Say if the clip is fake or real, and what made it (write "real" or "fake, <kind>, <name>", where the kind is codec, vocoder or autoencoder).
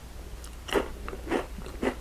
real